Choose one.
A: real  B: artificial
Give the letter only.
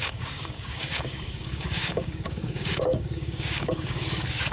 B